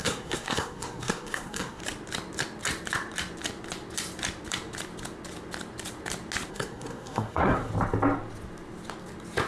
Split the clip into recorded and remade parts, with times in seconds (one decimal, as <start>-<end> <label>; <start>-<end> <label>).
0.0-1.8 remade; 1.8-6.5 recorded; 6.5-7.7 remade; 7.7-9.5 recorded